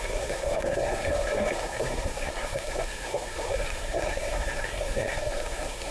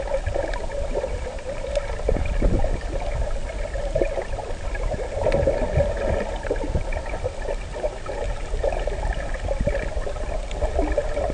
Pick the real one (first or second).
second